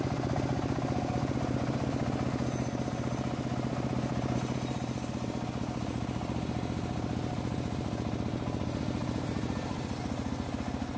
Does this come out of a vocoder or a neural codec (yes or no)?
no